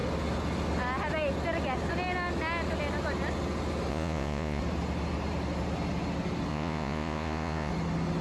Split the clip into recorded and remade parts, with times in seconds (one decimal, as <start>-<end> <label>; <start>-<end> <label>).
0.0-3.9 recorded; 3.9-4.6 remade; 4.6-6.5 recorded; 6.5-7.7 remade; 7.7-8.2 recorded